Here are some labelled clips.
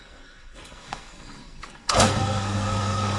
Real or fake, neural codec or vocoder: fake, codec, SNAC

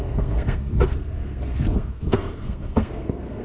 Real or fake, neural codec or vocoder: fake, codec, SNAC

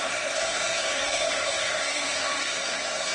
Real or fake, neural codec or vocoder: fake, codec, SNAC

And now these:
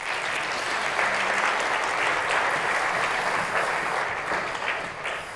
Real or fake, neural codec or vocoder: real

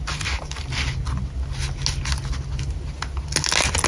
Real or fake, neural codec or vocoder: real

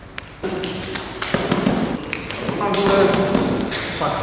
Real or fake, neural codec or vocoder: real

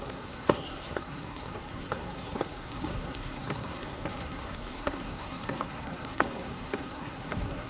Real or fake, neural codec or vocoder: fake, codec, SNAC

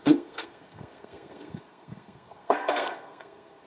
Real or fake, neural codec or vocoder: fake, codec, SNAC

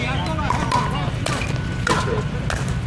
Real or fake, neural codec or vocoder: real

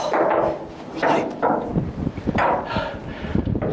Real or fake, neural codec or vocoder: real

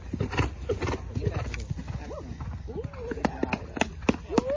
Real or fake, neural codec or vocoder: real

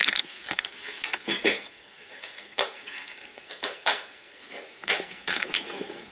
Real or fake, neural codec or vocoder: fake, codec, SNAC